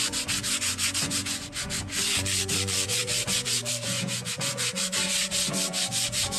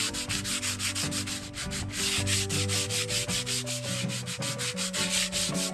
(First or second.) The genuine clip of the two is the second